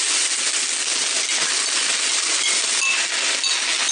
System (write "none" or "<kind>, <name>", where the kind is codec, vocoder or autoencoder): none